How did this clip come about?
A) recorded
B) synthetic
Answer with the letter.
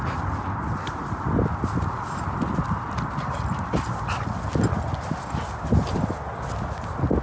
A